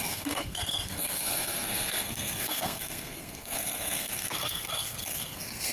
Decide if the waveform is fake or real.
fake